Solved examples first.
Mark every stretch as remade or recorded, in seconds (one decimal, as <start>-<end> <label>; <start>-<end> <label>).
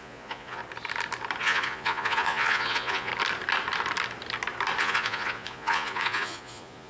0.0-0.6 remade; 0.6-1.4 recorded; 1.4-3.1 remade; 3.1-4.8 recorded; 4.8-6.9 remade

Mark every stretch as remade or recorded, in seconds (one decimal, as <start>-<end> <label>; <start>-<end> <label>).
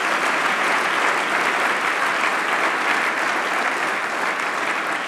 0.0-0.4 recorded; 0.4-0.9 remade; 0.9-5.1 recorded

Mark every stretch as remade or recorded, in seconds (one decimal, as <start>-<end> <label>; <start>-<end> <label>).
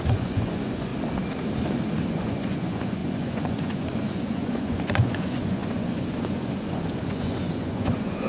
0.0-0.9 remade; 0.9-2.1 recorded; 2.1-8.3 remade